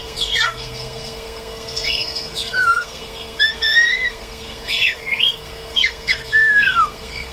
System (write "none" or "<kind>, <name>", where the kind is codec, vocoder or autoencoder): codec, SNAC